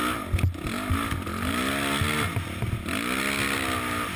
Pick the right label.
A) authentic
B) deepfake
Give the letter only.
A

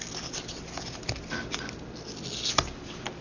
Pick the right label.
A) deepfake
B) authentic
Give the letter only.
B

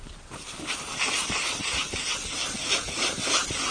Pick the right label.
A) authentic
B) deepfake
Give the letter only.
A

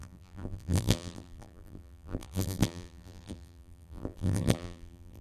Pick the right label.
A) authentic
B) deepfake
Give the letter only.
B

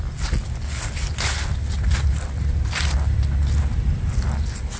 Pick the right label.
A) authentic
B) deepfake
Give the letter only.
A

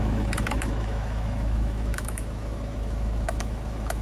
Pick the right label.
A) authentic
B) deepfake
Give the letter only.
B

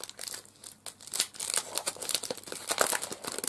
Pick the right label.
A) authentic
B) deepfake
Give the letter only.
A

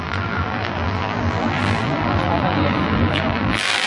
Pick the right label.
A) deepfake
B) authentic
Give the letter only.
A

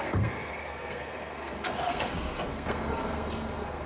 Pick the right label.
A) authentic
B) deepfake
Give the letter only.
B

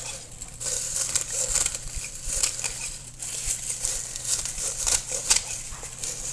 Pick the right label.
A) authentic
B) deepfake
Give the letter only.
B